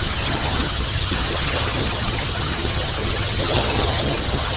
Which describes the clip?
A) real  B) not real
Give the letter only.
B